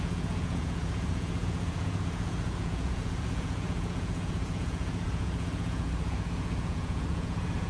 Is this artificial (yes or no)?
yes